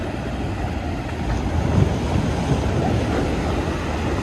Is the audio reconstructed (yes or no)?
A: no